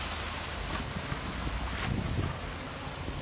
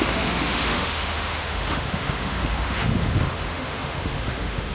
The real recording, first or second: first